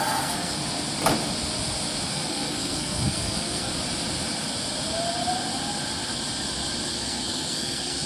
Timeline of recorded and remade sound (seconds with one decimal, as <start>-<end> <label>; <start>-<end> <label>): 0.0-0.6 remade; 0.6-2.1 recorded; 2.1-3.7 remade; 3.7-6.9 recorded; 6.9-8.1 remade